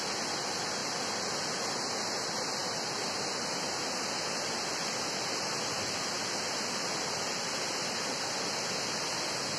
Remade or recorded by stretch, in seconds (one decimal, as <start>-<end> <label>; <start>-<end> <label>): 0.0-9.6 recorded